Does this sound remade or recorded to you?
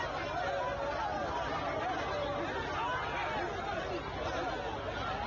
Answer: recorded